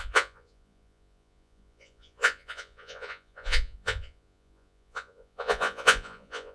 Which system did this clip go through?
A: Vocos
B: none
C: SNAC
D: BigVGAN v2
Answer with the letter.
A